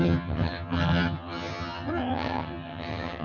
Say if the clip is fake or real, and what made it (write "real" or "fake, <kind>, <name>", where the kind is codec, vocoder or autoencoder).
fake, vocoder, HiFi-GAN